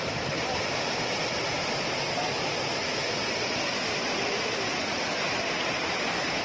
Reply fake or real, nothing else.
real